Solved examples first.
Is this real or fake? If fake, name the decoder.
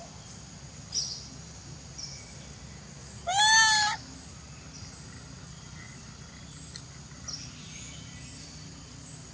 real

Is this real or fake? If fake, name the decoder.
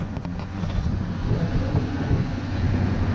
fake, vocoder, Vocos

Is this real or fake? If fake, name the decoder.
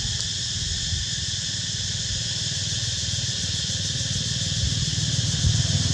real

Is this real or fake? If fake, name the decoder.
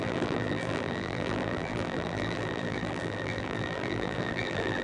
fake, vocoder, BigVGAN v2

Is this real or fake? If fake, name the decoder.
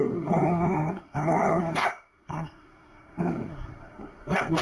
fake, codec, SNAC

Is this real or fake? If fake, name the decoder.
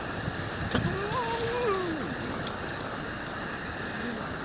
real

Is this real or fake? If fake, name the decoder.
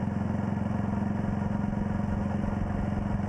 real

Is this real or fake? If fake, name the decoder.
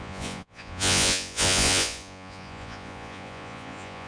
fake, vocoder, Vocos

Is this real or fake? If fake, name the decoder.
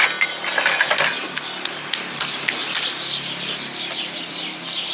real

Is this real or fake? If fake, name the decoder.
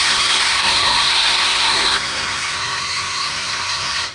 fake, codec, SNAC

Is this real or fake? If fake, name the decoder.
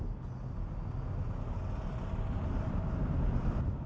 real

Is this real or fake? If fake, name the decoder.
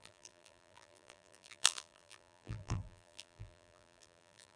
fake, vocoder, BigVGAN v2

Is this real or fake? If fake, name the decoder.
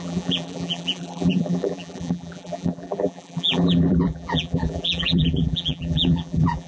fake, vocoder, BigVGAN v2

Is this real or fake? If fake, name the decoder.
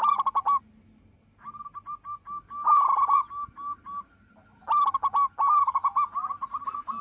real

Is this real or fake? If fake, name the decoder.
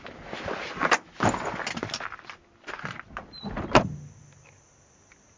real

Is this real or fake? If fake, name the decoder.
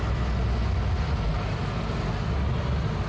real